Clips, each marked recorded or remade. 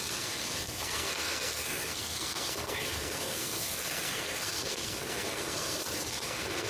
remade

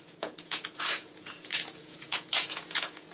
remade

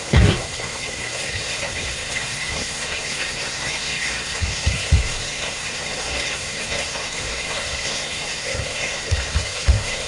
remade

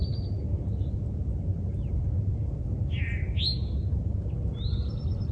recorded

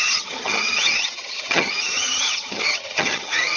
remade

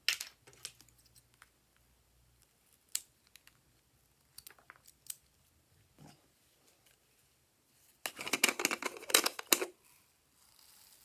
recorded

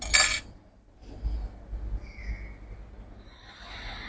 recorded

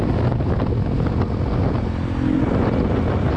recorded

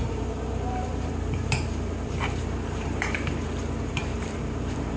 remade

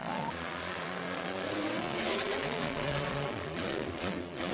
remade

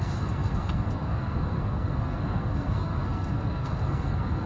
remade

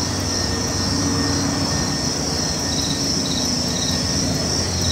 recorded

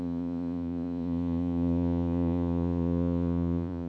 remade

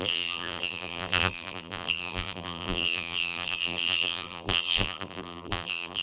remade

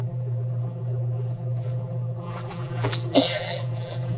remade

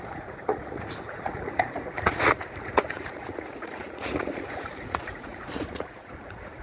remade